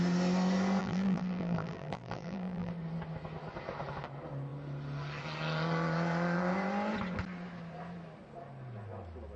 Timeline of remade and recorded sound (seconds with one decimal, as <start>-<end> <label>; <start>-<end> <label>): 0.0-0.8 recorded; 0.8-2.7 remade; 2.7-9.4 recorded